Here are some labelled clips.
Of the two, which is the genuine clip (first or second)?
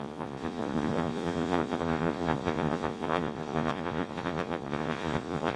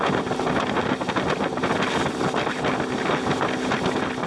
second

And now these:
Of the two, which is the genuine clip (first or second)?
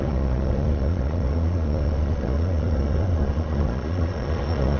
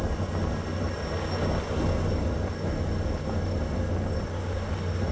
second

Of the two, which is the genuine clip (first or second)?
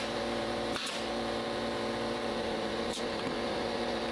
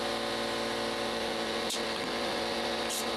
second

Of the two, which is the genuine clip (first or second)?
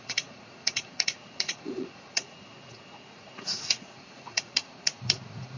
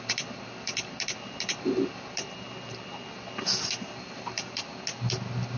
second